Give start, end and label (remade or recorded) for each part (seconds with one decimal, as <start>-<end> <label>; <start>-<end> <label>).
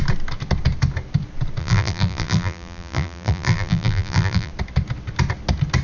0.0-1.6 recorded; 1.6-4.5 remade; 4.5-5.8 recorded